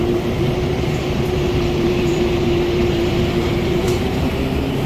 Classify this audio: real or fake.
fake